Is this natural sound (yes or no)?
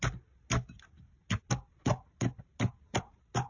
yes